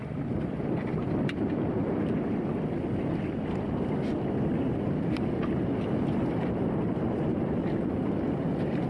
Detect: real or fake real